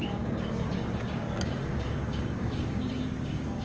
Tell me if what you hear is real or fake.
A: fake